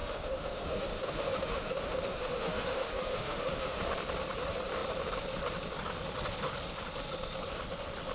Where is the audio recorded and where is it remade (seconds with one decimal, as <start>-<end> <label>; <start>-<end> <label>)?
0.0-3.8 remade; 3.8-8.1 recorded